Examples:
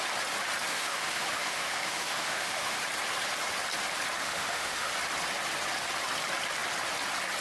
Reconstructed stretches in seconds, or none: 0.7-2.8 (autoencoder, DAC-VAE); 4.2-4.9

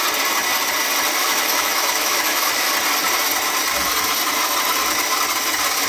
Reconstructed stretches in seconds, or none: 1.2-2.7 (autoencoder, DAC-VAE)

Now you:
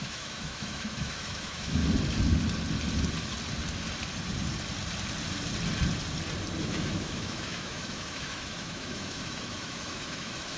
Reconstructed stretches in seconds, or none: 0.0-1.8 (autoencoder, DAC-VAE); 6.6-10.6

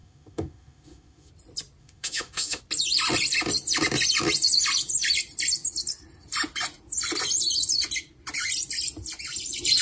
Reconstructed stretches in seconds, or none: 0.0-1.3 (autoencoder, DAC-VAE); 1.8-2.6